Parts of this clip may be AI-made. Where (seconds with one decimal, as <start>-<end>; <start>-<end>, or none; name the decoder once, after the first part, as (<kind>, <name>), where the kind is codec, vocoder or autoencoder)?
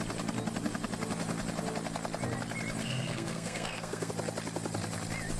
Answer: 2.8-4.1 (codec, SNAC)